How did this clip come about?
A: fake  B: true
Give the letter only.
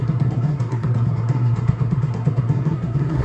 A